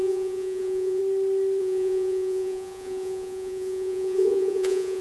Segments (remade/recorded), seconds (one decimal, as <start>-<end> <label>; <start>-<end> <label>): 0.0-1.0 remade; 1.0-1.6 recorded; 1.6-5.0 remade